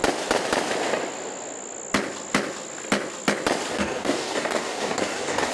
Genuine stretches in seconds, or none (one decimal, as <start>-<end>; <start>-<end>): 0.0-3.7